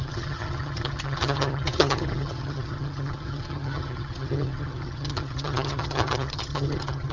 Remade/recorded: remade